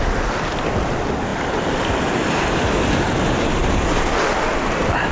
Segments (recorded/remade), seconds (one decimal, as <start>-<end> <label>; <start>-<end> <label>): 0.0-5.1 recorded